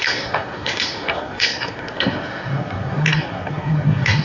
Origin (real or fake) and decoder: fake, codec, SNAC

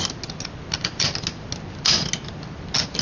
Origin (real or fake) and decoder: real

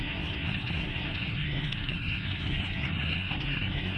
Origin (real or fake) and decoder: fake, codec, SNAC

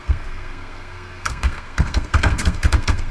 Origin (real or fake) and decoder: fake, codec, SNAC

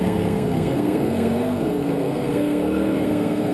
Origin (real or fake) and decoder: fake, codec, SNAC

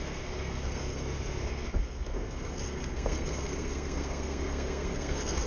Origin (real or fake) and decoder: fake, codec, SNAC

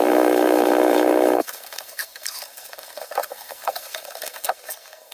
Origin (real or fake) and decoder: fake, codec, SNAC